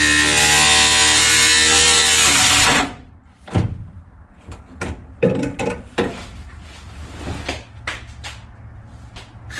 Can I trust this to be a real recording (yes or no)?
yes